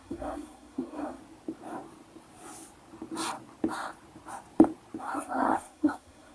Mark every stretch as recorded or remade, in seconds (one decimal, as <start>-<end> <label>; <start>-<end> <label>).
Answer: 0.0-1.2 remade; 1.2-5.0 recorded; 5.0-6.3 remade